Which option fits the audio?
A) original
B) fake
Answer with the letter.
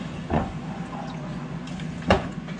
B